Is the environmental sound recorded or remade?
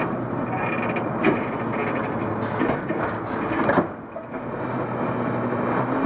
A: recorded